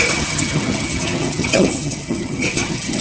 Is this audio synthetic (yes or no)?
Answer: yes